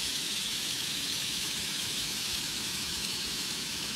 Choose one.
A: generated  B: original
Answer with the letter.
A